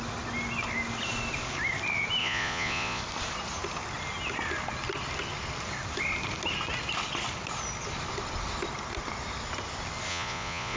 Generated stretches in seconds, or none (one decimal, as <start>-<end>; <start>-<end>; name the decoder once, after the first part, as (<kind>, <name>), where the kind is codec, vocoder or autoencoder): 2.2-3.0 (vocoder, Vocos); 10.1-10.8